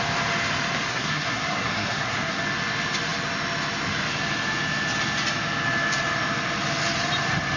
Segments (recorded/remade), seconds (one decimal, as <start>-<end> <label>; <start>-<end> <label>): 0.0-0.9 recorded; 0.9-2.4 remade; 2.4-7.6 recorded